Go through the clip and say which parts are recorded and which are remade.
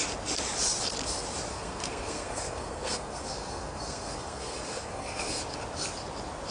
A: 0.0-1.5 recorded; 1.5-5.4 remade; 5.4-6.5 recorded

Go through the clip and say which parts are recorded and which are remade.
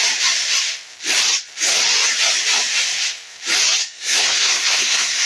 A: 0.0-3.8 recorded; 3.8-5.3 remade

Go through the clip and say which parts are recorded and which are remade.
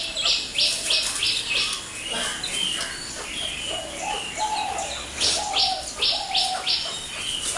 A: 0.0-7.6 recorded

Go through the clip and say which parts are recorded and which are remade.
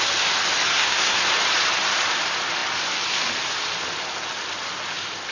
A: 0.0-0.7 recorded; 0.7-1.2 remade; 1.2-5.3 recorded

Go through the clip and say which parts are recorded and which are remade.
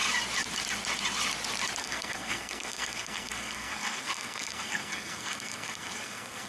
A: 0.0-1.8 recorded; 1.8-6.5 remade